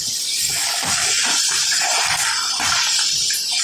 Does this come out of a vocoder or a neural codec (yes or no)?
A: no